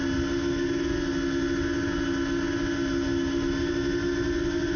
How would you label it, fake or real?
real